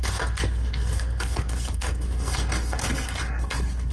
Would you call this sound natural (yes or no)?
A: no